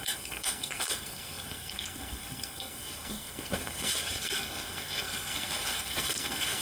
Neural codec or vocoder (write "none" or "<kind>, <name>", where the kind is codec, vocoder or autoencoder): codec, SNAC